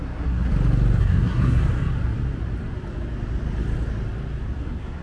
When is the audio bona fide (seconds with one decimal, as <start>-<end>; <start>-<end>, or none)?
0.5-1.0; 1.6-4.6